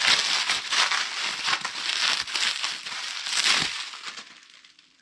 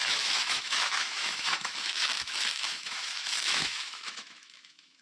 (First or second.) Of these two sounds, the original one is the first